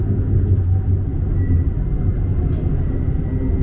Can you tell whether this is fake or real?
real